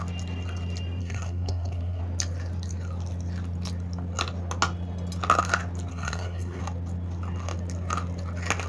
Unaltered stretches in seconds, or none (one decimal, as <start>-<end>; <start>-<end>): 0.0-1.0; 2.0-5.9; 6.6-8.7